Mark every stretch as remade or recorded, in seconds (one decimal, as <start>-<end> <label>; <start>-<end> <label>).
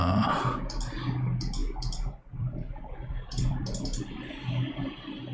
0.0-0.6 remade; 0.6-1.6 recorded; 1.6-4.3 remade; 4.3-5.3 recorded